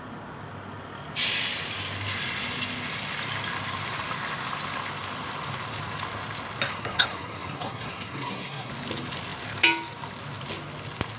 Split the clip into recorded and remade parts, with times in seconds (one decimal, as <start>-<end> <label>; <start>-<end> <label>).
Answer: 0.0-6.7 recorded; 6.7-8.7 remade; 8.7-11.2 recorded